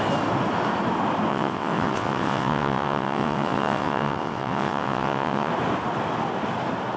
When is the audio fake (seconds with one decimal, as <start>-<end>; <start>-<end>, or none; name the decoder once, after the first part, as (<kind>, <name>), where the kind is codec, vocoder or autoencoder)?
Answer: 1.3-5.5 (vocoder, WaveNeXt)